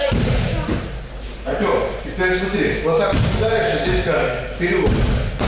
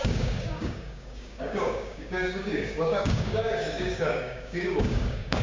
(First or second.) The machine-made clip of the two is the second